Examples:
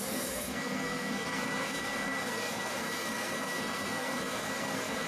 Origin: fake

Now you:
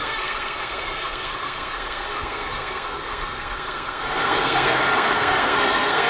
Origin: fake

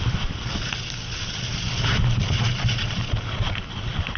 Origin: real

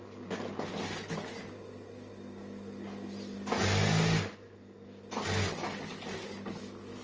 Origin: real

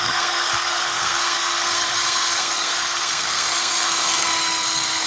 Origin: fake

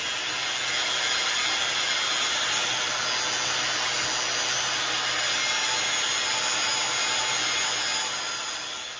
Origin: real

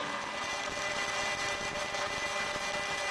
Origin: real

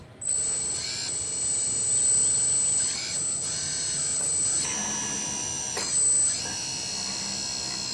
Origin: real